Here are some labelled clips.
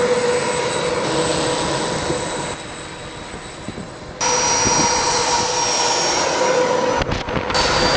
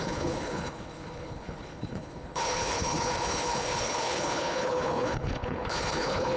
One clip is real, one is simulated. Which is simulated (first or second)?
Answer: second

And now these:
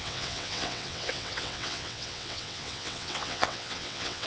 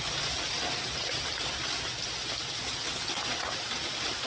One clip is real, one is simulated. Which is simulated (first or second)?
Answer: first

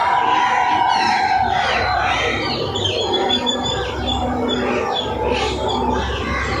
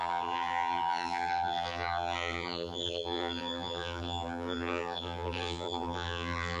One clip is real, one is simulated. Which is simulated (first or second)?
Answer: second